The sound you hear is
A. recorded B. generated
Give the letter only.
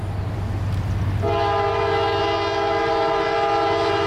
A